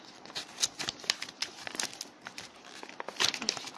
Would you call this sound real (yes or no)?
yes